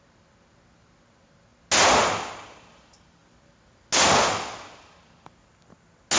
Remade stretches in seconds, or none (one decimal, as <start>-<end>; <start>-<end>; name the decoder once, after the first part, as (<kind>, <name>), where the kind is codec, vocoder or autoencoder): none

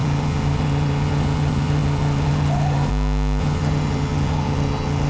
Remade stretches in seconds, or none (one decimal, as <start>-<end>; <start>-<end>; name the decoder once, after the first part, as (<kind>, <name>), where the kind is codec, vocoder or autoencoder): 0.0-2.9 (vocoder, HiFi-GAN); 3.4-5.1

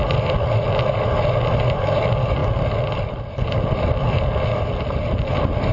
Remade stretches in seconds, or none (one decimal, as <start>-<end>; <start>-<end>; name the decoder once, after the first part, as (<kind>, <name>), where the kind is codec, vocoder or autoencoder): none

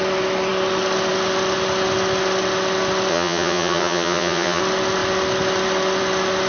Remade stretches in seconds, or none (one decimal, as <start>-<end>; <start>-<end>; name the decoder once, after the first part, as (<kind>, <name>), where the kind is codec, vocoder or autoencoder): 3.1-4.6 (vocoder, HiFi-GAN)

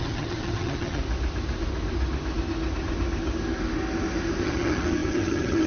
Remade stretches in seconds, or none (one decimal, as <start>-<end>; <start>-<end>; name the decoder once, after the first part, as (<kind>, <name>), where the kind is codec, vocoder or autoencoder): 0.0-1.0 (vocoder, HiFi-GAN); 4.4-5.7

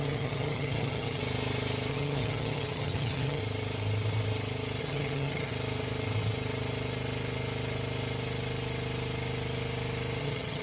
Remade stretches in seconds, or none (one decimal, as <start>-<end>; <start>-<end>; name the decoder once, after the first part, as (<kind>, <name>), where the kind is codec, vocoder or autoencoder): 0.0-1.2 (vocoder, HiFi-GAN); 1.9-3.4; 4.8-5.5; 10.2-10.6